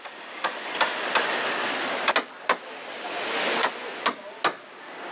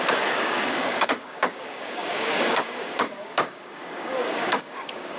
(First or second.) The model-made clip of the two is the second